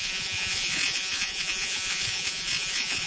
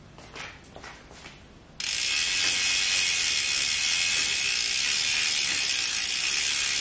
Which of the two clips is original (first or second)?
second